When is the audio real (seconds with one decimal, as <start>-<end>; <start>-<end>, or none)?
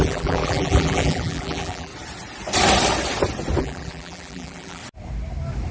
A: 1.9-3.6; 4.8-5.7